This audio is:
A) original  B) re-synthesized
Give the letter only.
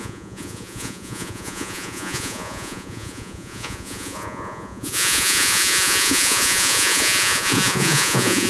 B